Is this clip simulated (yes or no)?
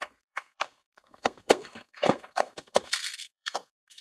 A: yes